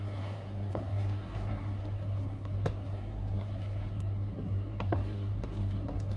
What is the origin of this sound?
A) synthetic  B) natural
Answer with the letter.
A